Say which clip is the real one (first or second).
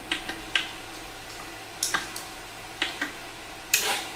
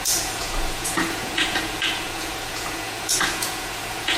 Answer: first